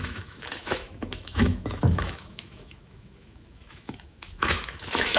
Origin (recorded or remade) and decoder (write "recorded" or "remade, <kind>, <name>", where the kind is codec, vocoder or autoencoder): remade, autoencoder, DAC-VAE